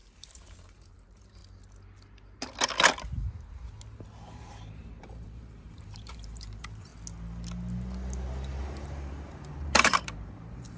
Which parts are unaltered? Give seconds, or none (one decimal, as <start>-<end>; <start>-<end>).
1.4-4.3; 6.9-8.6